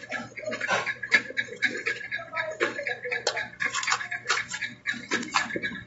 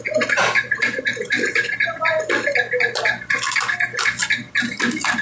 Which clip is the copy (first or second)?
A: first